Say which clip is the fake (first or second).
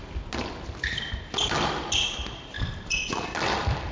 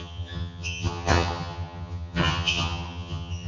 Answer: second